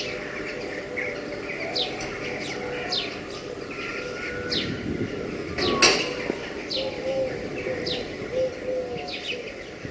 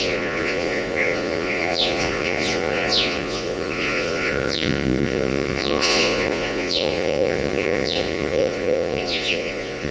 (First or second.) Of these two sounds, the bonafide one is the first